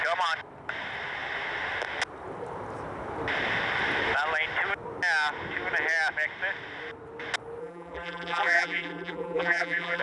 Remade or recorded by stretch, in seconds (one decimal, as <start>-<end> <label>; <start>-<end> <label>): 0.0-7.6 recorded; 7.6-10.0 remade